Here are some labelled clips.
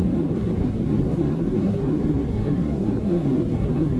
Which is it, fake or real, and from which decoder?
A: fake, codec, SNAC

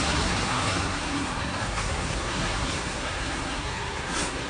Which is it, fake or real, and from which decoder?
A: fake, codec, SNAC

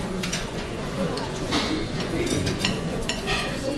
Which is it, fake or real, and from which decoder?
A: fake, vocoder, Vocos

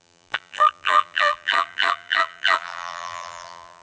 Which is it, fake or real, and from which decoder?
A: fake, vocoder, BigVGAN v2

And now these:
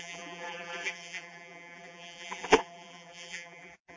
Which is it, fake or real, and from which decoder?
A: fake, vocoder, BigVGAN v2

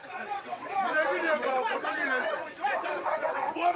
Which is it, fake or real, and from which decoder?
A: fake, vocoder, WaveNeXt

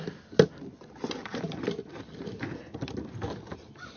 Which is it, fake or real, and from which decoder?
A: real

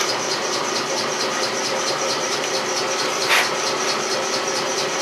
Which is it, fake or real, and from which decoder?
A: fake, vocoder, BigVGAN v2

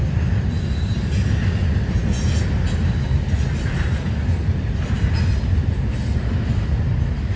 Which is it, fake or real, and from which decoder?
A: real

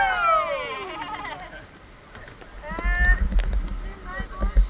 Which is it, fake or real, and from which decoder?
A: real